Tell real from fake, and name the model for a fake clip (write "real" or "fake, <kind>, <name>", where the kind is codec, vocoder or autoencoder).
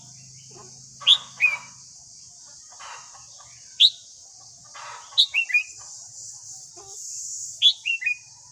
real